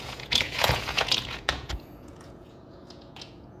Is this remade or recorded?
remade